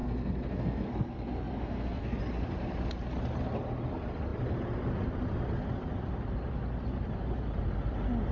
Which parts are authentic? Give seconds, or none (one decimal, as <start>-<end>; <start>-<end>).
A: 2.2-8.3